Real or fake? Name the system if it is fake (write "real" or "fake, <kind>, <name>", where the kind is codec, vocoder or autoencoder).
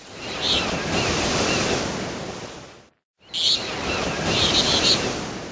real